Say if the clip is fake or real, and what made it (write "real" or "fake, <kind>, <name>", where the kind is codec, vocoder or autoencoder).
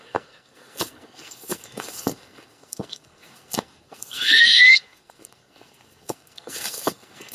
fake, codec, SNAC